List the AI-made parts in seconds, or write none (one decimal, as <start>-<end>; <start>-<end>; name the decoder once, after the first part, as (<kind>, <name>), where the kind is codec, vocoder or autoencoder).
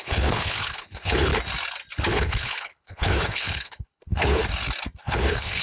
0.0-1.3 (codec, HILCodec); 2.1-4.4; 5.0-5.6